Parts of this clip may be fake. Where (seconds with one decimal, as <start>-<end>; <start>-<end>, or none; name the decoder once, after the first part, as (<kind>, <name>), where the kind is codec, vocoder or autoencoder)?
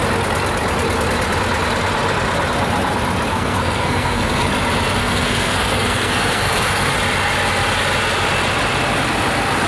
3.3-4.5 (codec, SNAC); 5.0-6.9